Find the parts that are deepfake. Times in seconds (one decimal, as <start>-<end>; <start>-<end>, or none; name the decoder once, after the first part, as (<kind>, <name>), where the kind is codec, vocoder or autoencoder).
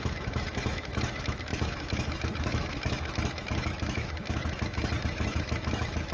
0.0-6.1 (autoencoder, DAC-VAE)